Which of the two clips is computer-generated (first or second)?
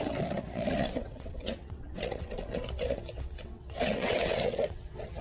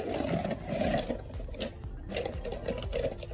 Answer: first